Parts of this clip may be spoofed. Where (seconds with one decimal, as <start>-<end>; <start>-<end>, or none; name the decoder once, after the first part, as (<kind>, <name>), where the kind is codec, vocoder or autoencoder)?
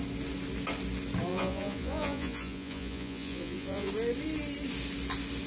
1.3-3.9 (vocoder, Vocos)